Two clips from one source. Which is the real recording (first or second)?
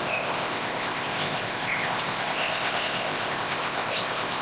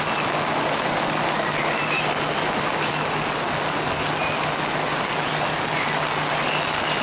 second